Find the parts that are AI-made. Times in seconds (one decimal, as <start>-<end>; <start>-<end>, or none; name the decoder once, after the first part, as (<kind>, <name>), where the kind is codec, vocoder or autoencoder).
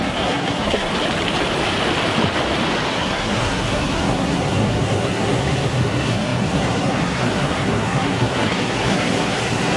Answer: 0.0-0.9 (codec, SNAC); 2.9-9.8